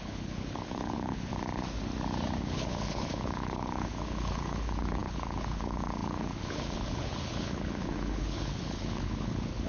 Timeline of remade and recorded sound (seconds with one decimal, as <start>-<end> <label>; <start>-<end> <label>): 0.0-1.3 remade; 1.3-2.4 recorded; 2.4-9.7 remade

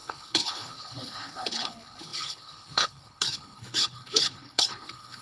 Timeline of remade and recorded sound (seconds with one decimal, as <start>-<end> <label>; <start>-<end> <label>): 0.0-5.2 remade